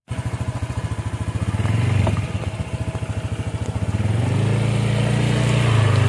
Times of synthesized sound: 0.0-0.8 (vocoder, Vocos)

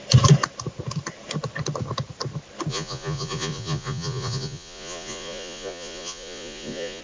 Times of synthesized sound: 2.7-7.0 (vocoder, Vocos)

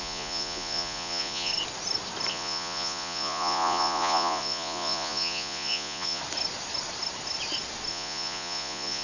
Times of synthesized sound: 0.0-1.5 (vocoder, Vocos); 2.3-6.2; 7.9-9.0

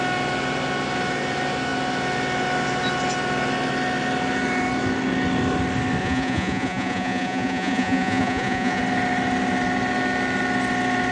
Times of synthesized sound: 6.0-8.8 (vocoder, Vocos)

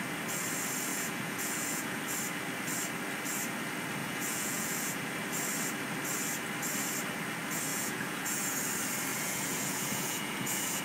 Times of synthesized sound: 0.9-2.0 (vocoder, Vocos); 4.0-5.0; 7.7-8.6; 9.1-10.8

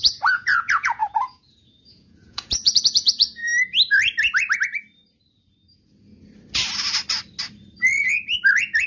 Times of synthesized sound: 0.0-3.4 (vocoder, Vocos)

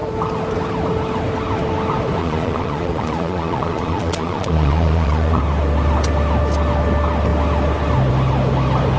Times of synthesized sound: 2.2-5.4 (vocoder, Vocos)